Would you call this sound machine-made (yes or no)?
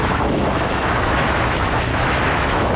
yes